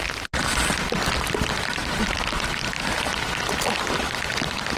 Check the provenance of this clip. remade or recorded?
recorded